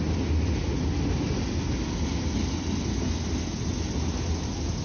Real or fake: real